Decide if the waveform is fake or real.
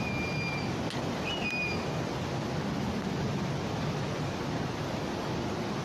real